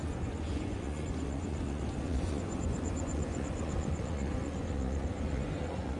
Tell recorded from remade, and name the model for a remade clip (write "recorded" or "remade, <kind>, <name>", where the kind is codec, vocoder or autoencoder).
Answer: remade, vocoder, Vocos